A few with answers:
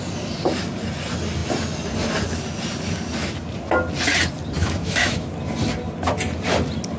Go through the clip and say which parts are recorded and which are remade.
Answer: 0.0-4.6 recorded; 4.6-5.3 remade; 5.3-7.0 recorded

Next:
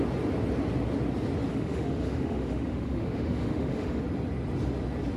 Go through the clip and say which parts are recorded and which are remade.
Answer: 0.0-1.5 recorded; 1.5-4.0 remade; 4.0-5.2 recorded